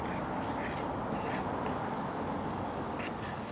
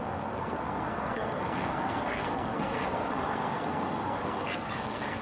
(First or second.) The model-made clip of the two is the second